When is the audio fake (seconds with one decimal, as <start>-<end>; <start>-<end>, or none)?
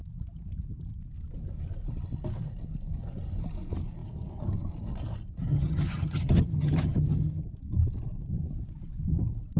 5.5-7.4